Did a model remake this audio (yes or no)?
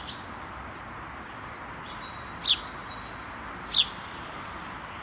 no